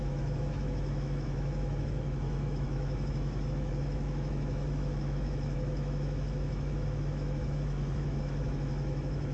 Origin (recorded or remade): remade